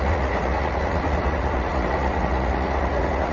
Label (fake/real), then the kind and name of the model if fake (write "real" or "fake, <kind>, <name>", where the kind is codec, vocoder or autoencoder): fake, vocoder, Vocos